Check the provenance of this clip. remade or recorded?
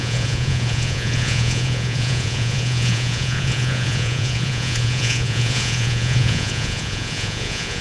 remade